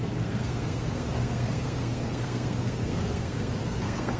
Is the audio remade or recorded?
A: remade